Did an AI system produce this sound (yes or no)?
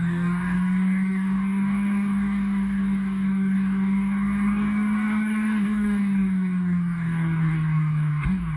yes